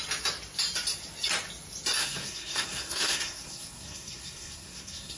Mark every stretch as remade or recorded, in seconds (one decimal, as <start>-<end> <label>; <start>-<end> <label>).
0.0-2.0 recorded; 2.0-5.2 remade